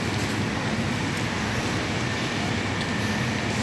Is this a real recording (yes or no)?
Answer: yes